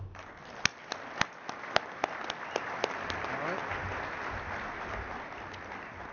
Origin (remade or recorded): recorded